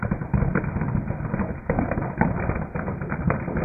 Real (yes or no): yes